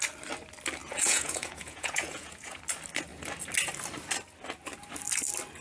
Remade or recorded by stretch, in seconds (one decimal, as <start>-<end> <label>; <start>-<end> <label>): 0.0-0.8 recorded; 0.8-2.6 remade; 2.6-5.6 recorded